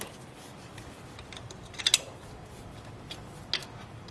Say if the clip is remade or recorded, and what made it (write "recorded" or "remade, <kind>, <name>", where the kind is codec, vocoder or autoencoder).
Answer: recorded